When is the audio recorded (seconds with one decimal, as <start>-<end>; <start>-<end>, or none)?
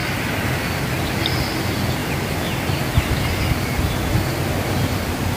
0.0-5.4